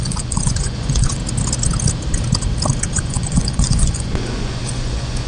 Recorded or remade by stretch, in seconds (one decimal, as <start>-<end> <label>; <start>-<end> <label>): 0.0-1.2 remade; 1.2-2.9 recorded; 2.9-5.3 remade